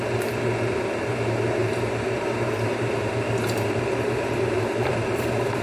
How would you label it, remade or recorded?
remade